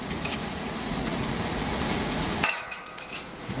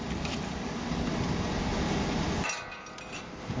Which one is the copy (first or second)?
first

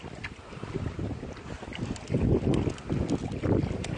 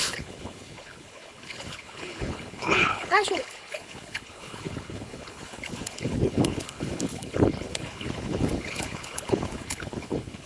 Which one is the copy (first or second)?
second